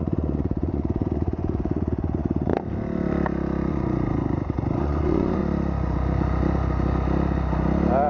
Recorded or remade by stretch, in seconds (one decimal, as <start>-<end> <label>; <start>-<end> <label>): 0.0-2.5 remade; 2.5-3.7 recorded; 3.7-5.4 remade; 5.4-8.1 recorded